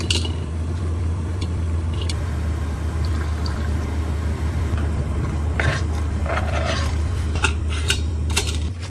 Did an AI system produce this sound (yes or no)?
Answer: yes